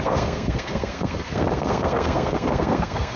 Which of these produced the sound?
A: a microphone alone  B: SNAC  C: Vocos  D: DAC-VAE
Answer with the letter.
B